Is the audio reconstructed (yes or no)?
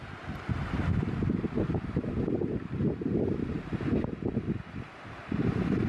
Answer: no